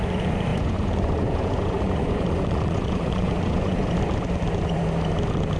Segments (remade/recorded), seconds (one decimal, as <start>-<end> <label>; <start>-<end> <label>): 0.0-0.5 recorded; 0.5-3.9 remade; 3.9-5.6 recorded